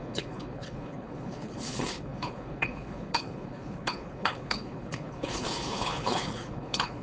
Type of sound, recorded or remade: remade